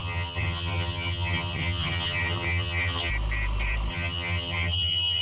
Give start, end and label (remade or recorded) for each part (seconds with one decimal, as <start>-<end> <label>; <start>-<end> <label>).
0.0-3.1 remade; 3.1-3.9 recorded; 3.9-5.2 remade